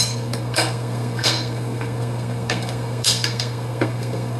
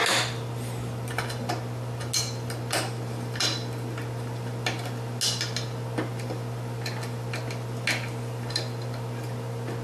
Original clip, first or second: second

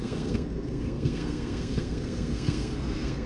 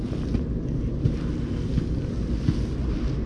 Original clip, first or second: second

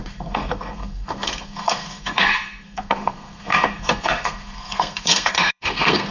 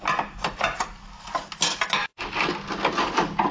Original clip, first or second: second